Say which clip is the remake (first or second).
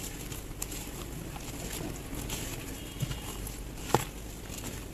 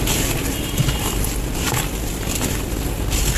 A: second